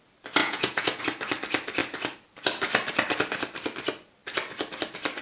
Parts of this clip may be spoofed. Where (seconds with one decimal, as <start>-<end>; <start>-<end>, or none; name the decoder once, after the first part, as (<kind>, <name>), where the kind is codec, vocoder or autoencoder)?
0.4-1.0 (vocoder, Vocos)